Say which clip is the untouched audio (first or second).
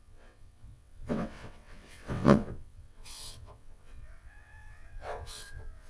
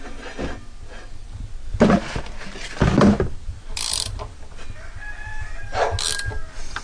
second